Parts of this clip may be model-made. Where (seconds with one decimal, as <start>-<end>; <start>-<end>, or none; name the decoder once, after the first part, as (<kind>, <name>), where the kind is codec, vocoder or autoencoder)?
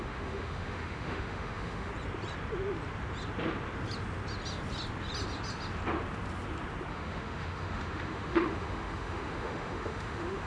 0.0-1.9 (autoencoder, DAC-VAE); 6.9-10.5